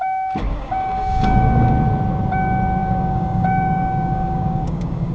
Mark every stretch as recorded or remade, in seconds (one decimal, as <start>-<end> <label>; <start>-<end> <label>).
0.0-0.5 recorded; 0.5-1.7 remade; 1.7-2.8 recorded; 2.8-5.1 remade